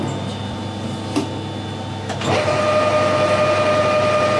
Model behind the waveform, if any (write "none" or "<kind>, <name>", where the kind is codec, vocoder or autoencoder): none